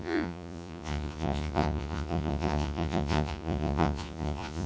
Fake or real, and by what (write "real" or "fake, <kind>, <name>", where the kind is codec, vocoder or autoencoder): fake, vocoder, Vocos